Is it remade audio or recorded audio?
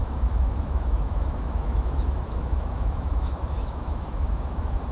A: remade